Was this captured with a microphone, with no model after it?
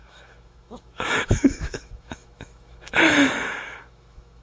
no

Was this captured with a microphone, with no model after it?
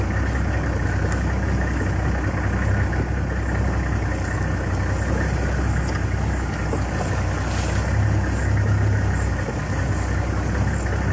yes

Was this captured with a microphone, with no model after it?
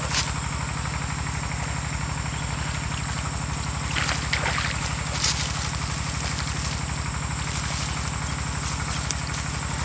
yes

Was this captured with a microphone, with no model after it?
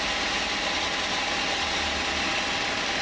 yes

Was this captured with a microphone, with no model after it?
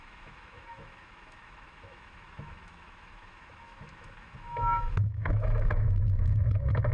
no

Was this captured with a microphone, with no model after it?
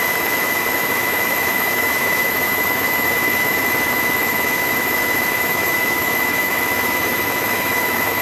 no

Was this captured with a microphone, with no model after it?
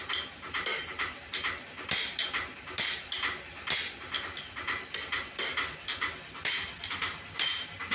yes